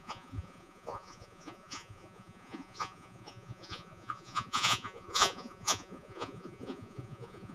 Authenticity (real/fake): fake